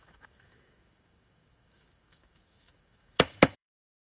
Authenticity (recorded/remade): remade